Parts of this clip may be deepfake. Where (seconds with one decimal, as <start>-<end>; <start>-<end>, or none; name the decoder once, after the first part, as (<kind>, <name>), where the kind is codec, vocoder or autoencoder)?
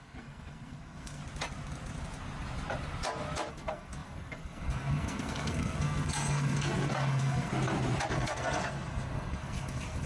0.0-1.2 (codec, SNAC); 3.5-7.5; 8.1-10.1